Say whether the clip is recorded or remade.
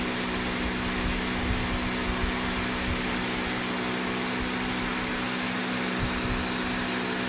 recorded